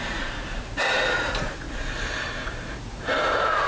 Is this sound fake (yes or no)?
yes